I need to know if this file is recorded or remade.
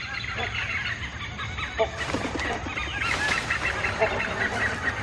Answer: recorded